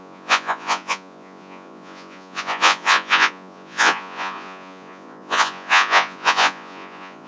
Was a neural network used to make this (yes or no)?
yes